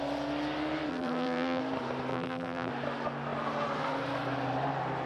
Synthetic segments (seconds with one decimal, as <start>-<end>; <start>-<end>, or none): 0.9-1.6; 2.1-2.7